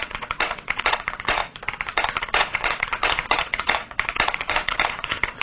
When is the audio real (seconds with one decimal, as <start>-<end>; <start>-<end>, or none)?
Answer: 1.4-2.2